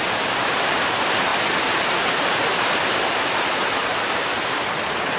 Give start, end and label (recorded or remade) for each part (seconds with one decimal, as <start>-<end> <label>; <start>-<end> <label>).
0.0-1.3 remade; 1.3-3.3 recorded; 3.3-5.2 remade